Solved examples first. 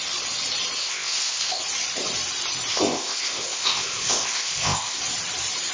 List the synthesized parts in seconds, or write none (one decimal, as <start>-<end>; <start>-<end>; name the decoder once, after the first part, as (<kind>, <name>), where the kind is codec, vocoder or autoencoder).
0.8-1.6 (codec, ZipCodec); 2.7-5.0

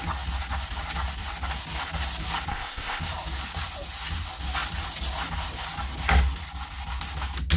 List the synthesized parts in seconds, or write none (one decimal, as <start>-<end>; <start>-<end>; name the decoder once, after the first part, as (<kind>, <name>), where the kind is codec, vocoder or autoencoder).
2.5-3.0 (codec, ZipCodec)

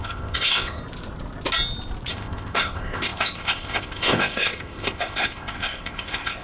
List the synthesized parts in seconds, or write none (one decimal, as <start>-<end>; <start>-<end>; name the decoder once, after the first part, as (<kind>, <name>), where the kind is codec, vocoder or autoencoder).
0.0-0.8 (codec, ZipCodec); 2.1-6.4

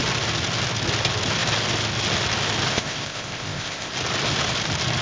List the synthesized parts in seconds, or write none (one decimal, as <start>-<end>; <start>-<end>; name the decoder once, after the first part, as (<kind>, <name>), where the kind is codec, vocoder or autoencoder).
2.7-3.9 (codec, ZipCodec)

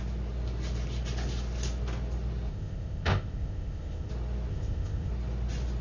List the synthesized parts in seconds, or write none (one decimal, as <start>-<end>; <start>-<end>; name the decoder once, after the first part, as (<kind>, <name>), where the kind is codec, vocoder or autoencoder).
2.5-4.1 (codec, ZipCodec); 4.5-5.1

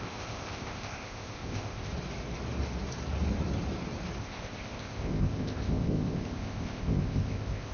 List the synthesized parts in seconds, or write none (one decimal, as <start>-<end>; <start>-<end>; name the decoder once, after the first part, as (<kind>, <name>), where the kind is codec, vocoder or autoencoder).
0.0-1.9 (codec, ZipCodec); 4.2-7.7